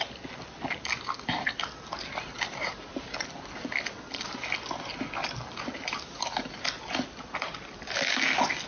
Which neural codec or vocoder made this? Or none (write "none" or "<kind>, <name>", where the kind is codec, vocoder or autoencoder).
none